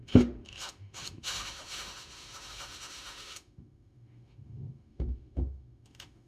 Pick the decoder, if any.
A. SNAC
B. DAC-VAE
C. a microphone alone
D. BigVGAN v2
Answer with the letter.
B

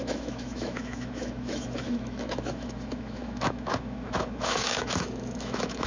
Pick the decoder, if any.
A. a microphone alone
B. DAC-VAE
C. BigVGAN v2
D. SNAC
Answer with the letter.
B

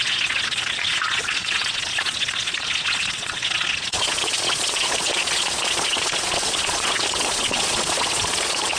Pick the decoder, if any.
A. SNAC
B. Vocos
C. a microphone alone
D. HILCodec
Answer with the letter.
B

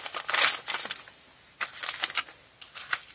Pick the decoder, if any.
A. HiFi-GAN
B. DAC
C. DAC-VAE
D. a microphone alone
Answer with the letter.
D